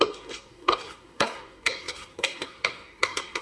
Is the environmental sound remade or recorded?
remade